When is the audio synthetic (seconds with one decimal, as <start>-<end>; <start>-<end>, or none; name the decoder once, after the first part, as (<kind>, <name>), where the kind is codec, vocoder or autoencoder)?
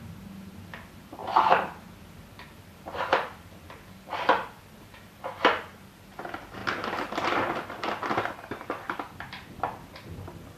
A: 1.2-5.4 (vocoder, BigVGAN v2); 6.6-9.6